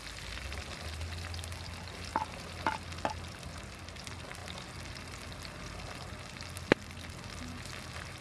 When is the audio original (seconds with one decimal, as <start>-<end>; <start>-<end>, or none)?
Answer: 0.0-8.2